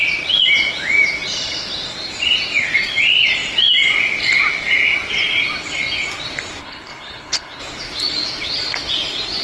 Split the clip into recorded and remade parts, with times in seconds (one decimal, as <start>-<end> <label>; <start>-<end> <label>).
0.0-6.6 recorded; 6.6-7.6 remade; 7.6-9.4 recorded